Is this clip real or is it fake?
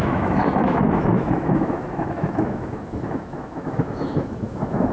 fake